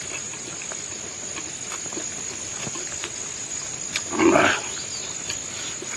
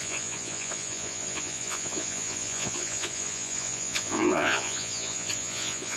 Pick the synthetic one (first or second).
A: second